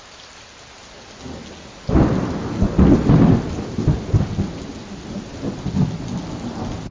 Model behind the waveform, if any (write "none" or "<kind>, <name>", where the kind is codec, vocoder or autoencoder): none